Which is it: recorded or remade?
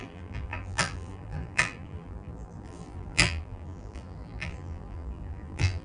remade